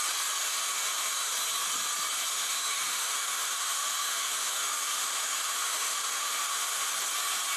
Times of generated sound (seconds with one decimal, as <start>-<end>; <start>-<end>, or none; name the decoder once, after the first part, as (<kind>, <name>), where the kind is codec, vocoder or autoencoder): 0.4-1.3 (autoencoder, DAC-VAE); 2.3-6.9